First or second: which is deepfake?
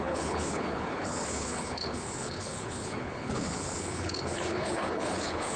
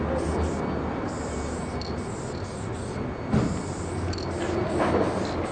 first